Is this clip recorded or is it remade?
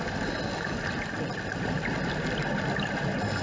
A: recorded